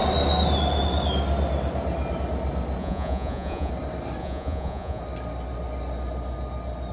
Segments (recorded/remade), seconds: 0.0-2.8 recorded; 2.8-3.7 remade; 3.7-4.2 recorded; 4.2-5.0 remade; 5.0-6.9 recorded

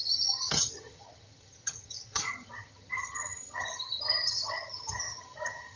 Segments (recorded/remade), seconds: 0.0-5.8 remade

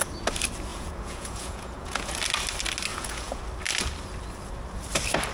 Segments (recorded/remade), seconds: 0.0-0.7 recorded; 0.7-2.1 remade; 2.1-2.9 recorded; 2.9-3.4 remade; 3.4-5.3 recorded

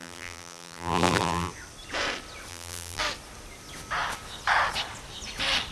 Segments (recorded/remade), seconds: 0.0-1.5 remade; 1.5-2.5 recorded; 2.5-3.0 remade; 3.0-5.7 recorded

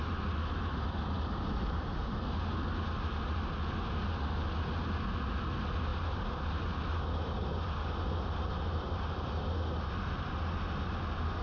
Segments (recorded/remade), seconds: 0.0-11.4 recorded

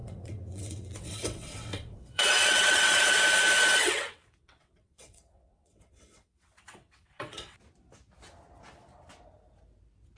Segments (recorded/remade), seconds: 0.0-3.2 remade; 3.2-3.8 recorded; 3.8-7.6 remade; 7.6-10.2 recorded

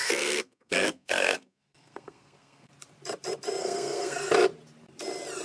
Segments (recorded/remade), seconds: 0.0-2.7 remade; 2.7-3.6 recorded; 3.6-4.3 remade; 4.3-5.4 recorded

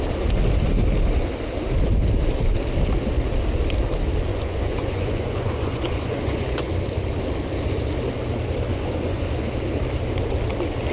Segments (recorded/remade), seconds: 0.0-4.3 recorded; 4.3-6.7 remade; 6.7-8.7 recorded; 8.7-9.3 remade; 9.3-10.9 recorded